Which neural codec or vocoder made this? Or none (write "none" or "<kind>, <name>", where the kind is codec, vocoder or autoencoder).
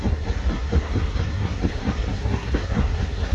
codec, SNAC